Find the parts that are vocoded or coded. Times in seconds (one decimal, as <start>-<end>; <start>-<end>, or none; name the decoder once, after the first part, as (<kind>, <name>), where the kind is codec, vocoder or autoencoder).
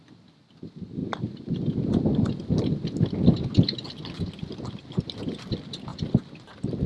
1.0-2.9 (vocoder, BigVGAN v2); 5.9-6.4